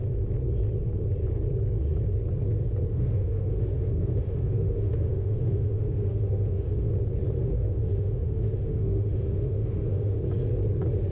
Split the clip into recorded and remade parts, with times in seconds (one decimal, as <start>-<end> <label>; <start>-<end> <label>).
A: 0.0-2.9 recorded; 2.9-6.9 remade; 6.9-7.4 recorded; 7.4-10.2 remade; 10.2-11.1 recorded